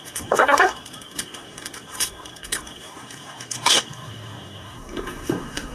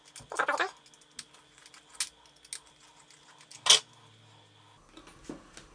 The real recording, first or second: second